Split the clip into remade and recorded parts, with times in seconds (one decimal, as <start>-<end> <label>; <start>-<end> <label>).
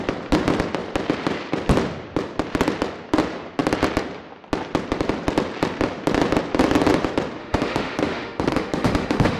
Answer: 0.0-7.4 recorded; 7.4-9.4 remade